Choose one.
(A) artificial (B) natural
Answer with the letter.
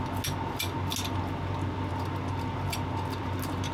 B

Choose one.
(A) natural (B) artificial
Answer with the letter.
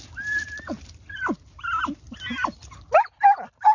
A